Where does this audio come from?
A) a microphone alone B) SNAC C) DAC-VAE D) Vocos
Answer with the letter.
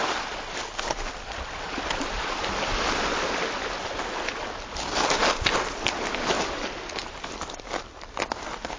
A